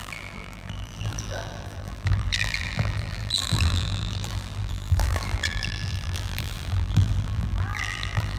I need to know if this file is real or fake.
fake